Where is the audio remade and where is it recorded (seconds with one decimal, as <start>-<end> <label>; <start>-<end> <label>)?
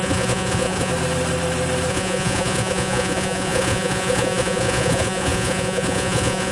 0.0-0.9 remade; 0.9-1.9 recorded; 1.9-6.5 remade